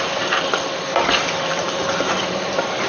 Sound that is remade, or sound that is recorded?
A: remade